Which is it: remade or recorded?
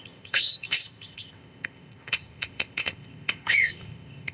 remade